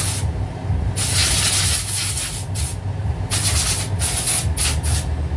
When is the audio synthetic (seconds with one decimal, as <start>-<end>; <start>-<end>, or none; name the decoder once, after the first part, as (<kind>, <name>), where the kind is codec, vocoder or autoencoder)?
none